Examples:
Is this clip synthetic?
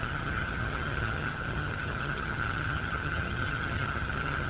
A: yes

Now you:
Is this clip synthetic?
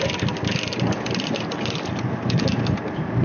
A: no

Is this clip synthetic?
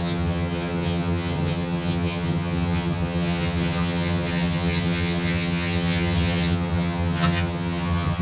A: yes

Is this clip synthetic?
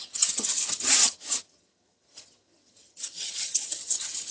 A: yes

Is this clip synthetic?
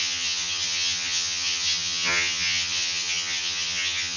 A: yes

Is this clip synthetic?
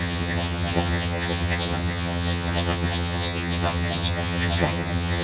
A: yes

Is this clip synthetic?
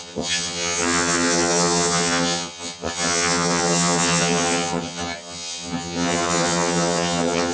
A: yes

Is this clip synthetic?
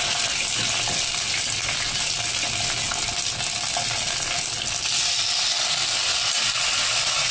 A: no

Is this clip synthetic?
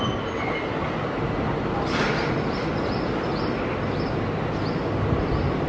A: no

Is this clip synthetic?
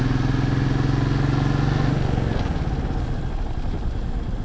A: no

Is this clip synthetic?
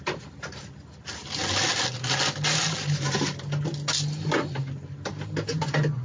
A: no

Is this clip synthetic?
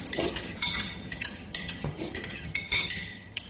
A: yes